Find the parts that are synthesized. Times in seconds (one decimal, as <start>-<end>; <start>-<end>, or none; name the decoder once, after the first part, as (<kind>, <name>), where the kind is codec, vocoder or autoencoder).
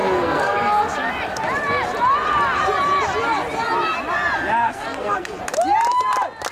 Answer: 0.0-1.1 (codec, SNAC); 4.6-5.4